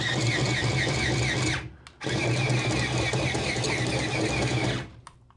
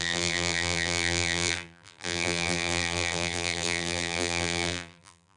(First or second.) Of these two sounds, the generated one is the second